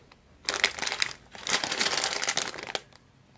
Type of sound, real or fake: real